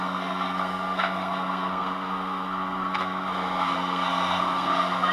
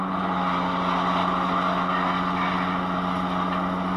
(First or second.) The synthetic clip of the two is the first